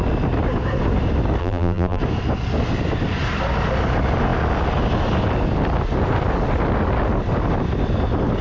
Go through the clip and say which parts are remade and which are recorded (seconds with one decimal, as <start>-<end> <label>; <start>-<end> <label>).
0.0-1.4 recorded; 1.4-2.0 remade; 2.0-8.4 recorded